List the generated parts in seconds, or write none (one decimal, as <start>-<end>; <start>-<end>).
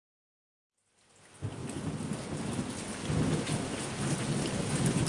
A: none